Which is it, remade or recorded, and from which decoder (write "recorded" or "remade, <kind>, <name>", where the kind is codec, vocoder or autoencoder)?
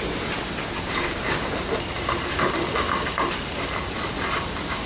recorded